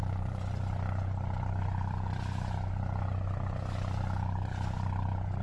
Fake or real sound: real